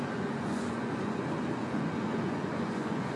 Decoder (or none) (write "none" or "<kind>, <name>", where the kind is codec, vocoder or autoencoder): vocoder, Vocos